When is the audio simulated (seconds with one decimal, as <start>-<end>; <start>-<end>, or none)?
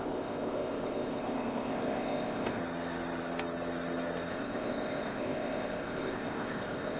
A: 0.0-2.6; 4.3-7.0